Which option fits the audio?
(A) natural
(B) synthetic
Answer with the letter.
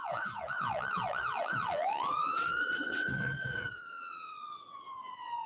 B